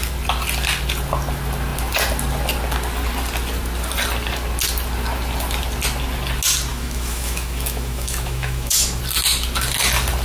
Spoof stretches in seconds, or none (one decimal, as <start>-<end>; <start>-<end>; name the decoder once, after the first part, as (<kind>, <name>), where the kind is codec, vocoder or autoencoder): 6.7-9.0 (autoencoder, DAC-VAE)